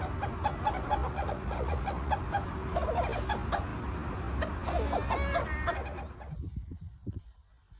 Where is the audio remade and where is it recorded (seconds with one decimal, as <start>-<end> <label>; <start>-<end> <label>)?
0.0-1.0 recorded; 1.0-2.2 remade; 2.2-7.8 recorded